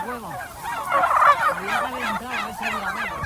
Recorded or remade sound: recorded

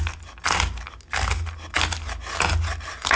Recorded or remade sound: recorded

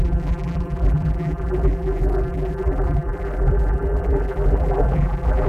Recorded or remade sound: remade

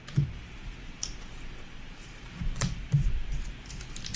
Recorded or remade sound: remade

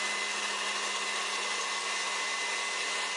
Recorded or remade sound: recorded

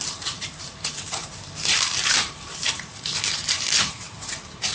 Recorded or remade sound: remade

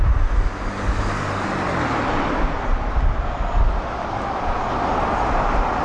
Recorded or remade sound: recorded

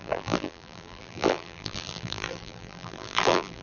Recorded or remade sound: remade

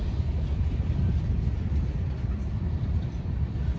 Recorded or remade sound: recorded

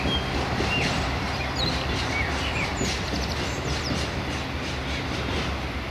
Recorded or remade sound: recorded